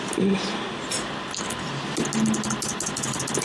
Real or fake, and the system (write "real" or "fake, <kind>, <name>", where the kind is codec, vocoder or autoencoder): real